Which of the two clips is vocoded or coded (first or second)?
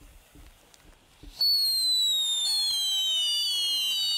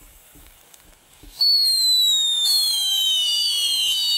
second